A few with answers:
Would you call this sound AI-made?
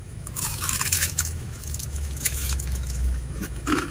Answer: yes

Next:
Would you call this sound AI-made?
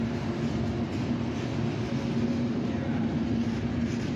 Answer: no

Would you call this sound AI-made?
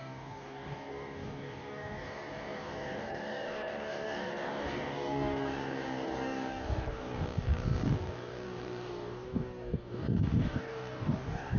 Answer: yes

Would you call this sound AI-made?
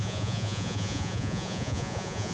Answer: yes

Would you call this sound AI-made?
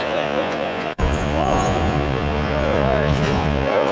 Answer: yes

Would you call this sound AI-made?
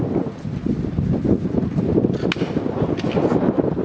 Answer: no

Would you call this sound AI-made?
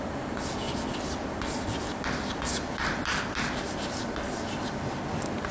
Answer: no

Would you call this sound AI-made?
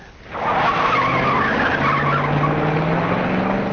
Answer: no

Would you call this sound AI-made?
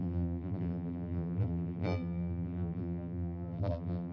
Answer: yes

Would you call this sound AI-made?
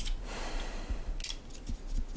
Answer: no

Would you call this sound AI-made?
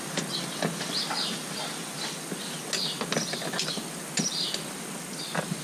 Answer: no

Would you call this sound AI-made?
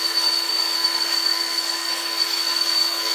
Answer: yes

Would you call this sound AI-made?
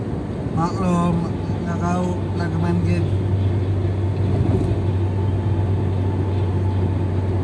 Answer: no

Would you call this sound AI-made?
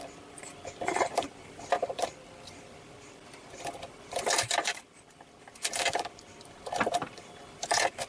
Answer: yes